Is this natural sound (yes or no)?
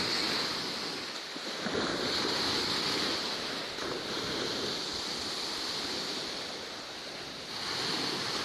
yes